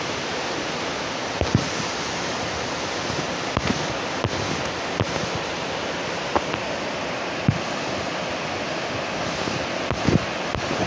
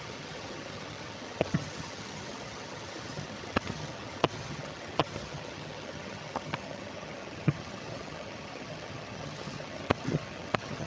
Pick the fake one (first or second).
second